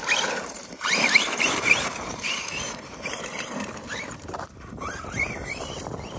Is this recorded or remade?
remade